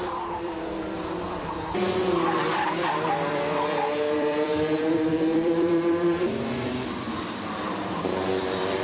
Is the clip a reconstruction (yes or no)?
yes